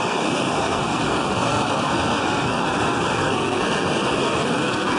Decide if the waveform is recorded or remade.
remade